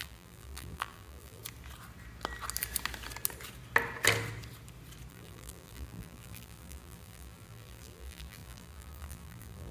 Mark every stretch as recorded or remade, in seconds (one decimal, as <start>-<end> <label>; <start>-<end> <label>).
0.0-1.4 remade; 1.4-5.1 recorded; 5.1-9.7 remade